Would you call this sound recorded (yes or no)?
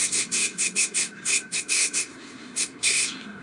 no